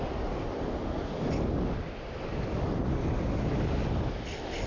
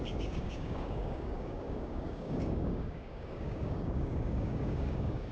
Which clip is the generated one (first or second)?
second